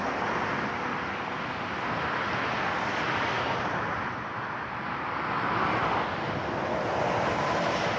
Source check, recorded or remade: recorded